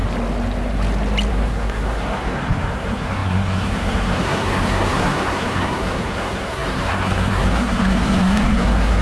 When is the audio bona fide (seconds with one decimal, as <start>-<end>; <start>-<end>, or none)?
0.0-1.3

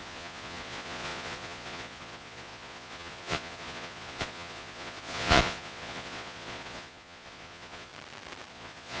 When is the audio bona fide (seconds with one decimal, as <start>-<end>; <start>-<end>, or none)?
7.9-8.5

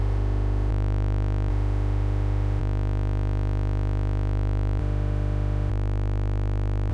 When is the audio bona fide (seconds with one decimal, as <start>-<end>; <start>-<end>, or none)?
0.7-1.5; 2.6-4.8; 5.7-6.9

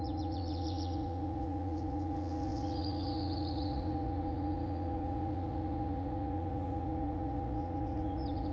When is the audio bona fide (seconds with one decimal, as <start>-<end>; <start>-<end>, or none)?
none

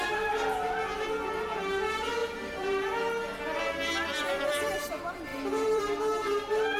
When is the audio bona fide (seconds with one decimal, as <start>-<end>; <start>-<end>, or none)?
0.0-6.8

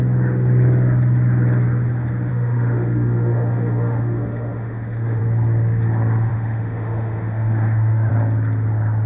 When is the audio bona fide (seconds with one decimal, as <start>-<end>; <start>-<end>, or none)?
0.0-2.3; 5.2-6.3; 8.1-9.1

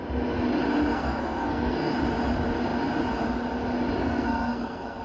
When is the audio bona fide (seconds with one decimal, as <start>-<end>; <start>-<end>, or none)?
0.0-0.9; 1.9-4.0

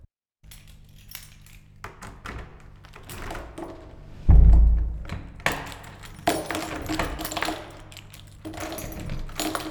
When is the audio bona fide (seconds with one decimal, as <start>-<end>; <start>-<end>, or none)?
0.0-9.7